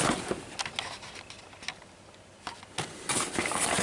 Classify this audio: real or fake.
real